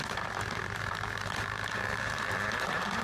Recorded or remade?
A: remade